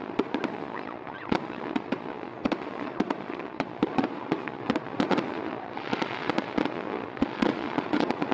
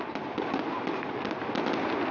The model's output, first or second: first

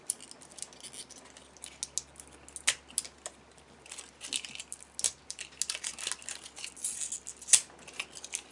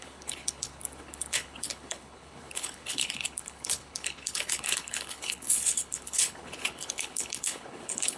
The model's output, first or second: second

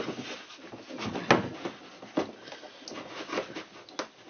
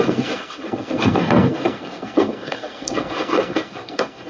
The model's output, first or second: second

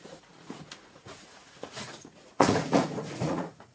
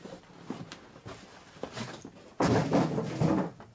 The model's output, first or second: first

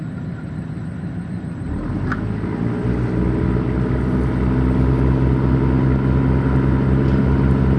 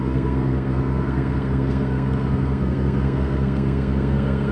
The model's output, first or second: second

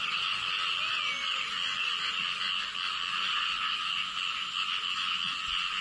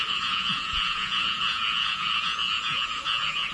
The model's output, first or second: second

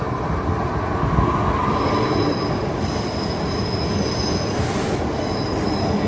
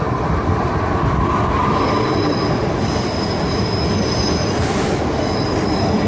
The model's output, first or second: second